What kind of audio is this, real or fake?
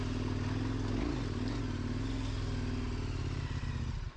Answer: real